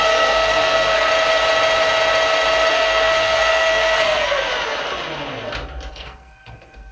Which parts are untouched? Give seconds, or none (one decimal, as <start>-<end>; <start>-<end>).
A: 1.1-2.7; 4.5-5.9